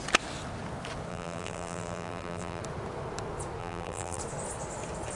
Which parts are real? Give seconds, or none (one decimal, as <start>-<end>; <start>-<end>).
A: 0.0-1.1; 2.6-3.6; 4.2-5.2